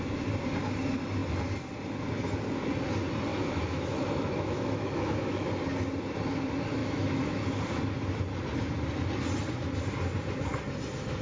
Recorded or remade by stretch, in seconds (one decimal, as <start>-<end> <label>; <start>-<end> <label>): 0.0-3.3 recorded; 3.3-5.5 remade; 5.5-6.8 recorded; 6.8-7.4 remade; 7.4-11.2 recorded